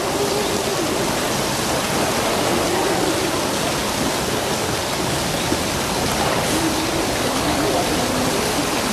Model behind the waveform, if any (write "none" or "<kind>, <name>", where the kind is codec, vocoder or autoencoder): none